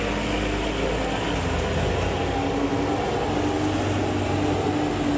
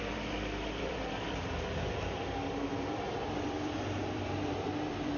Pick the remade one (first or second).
second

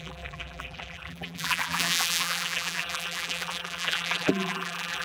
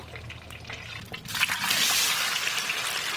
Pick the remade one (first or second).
first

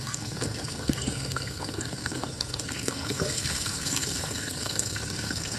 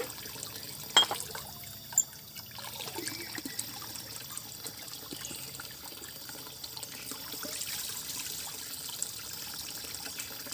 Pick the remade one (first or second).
first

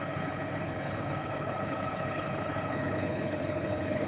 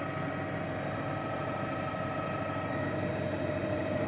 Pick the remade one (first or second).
first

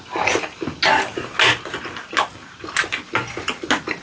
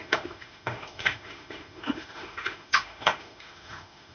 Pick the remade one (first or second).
second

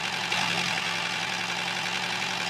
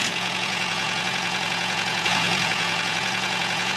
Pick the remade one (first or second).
second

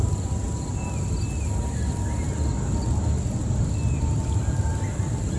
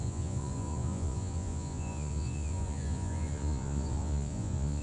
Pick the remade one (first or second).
second